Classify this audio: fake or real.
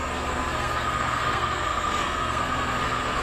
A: fake